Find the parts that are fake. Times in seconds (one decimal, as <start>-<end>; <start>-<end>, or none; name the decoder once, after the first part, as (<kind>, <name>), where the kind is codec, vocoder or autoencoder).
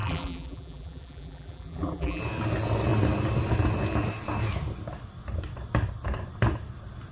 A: 0.0-2.2 (vocoder, BigVGAN v2)